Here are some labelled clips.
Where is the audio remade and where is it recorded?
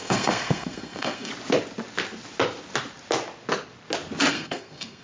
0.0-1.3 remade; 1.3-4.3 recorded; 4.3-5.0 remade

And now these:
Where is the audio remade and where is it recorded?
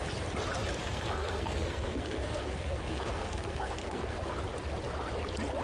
0.0-0.8 recorded; 0.8-4.2 remade; 4.2-5.6 recorded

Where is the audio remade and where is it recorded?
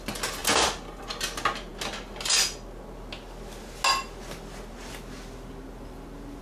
0.0-6.4 recorded